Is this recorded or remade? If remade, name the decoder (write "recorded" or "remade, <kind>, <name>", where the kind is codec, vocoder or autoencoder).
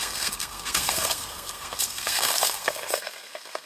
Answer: remade, codec, SNAC